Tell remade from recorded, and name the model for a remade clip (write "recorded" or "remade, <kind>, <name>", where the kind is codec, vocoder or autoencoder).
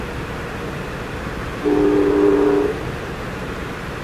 remade, vocoder, BigVGAN v2